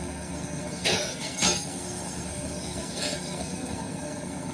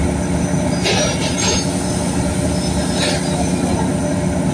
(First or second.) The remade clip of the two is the first